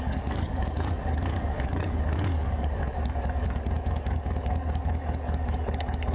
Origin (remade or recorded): remade